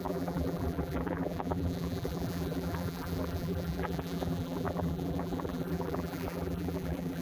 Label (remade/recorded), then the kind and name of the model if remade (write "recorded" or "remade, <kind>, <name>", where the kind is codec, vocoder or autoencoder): remade, vocoder, BigVGAN v2